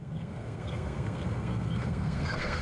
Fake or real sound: fake